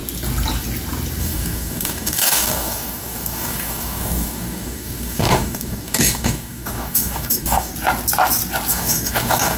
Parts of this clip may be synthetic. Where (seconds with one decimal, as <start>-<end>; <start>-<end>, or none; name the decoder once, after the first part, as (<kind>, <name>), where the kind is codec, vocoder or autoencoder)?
1.2-7.7 (codec, DAC); 8.7-9.6